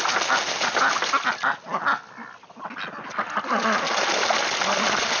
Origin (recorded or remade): recorded